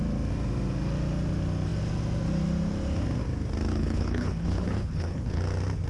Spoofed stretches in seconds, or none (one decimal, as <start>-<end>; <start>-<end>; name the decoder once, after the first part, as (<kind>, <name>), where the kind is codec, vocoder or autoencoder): 3.7-5.4 (codec, HILCodec)